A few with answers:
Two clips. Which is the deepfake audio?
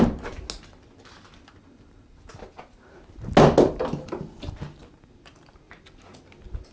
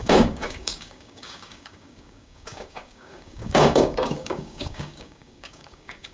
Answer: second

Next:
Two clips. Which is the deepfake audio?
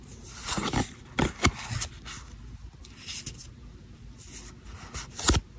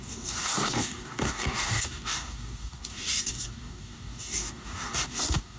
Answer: second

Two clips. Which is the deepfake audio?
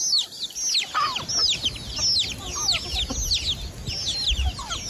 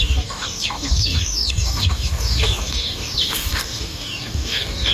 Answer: second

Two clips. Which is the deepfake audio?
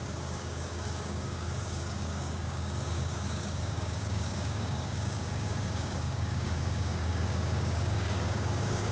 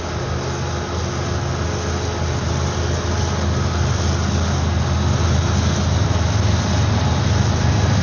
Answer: first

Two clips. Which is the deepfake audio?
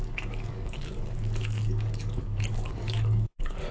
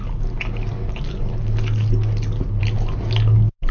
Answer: first